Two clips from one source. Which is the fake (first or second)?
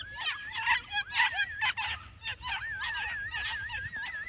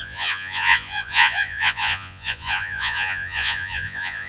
second